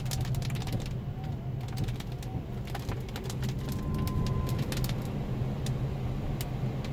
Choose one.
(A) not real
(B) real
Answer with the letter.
B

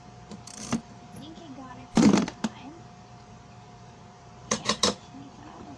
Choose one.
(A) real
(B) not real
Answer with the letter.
B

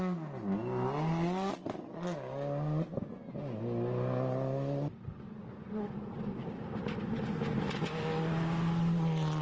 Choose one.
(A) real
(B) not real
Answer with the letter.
A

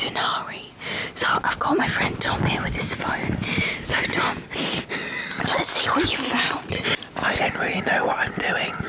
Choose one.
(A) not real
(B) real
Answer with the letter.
B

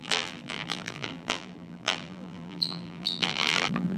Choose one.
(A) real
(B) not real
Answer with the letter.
B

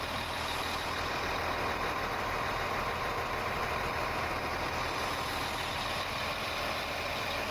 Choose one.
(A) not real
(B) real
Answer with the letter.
A